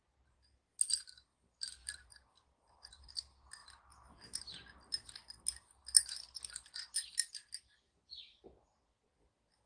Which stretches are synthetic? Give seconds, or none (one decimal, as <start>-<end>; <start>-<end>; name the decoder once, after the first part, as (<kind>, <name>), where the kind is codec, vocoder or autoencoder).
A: 1.3-3.1 (vocoder, BigVGAN v2)